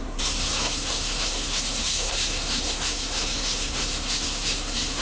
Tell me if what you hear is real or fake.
fake